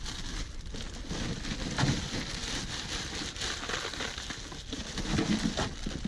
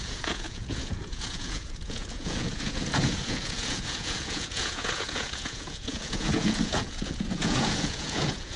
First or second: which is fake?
second